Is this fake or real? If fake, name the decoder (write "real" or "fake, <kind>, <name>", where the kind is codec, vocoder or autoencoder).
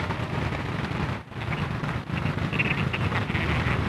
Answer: real